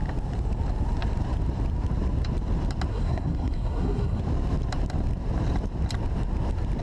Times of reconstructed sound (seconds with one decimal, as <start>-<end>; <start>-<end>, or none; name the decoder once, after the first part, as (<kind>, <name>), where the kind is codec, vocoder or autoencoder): 2.9-4.2 (codec, SNAC)